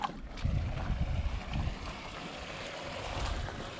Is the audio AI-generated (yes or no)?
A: no